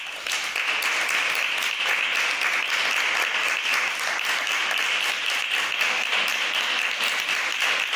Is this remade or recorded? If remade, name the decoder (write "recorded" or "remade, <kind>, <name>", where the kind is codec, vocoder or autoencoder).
recorded